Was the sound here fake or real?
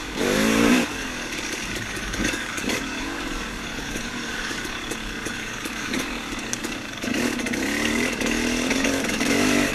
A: fake